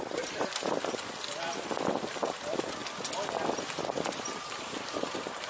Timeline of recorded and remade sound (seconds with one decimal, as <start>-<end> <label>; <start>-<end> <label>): 0.0-0.5 remade; 0.5-2.1 recorded; 2.1-2.8 remade; 2.8-4.4 recorded; 4.4-5.5 remade